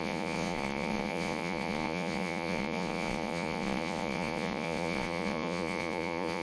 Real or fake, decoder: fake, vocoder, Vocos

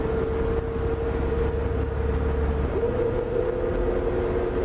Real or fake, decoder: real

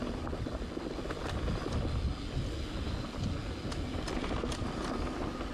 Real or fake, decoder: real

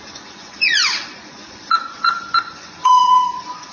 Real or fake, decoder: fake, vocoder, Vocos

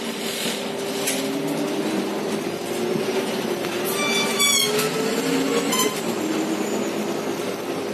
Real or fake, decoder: real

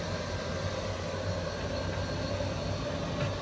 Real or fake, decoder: real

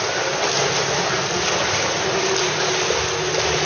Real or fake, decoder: real